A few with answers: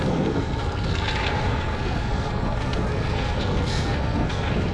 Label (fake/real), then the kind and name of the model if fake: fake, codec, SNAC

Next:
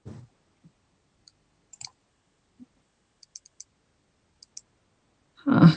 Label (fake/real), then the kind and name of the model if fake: real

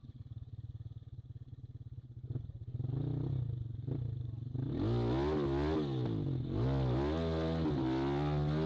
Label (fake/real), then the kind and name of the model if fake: real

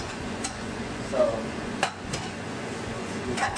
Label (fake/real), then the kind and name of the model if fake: fake, vocoder, Vocos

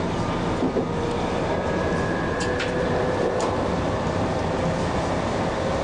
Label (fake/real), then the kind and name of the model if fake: real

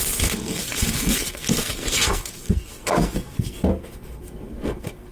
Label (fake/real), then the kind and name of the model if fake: fake, codec, SNAC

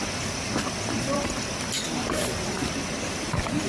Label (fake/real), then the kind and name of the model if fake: real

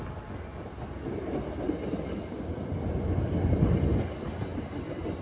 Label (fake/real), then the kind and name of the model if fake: real